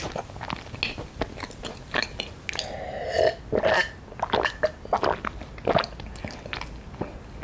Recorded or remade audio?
recorded